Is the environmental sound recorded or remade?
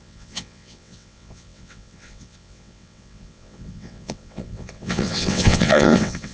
remade